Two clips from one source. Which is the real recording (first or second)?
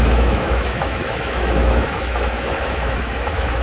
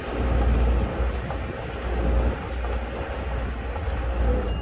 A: second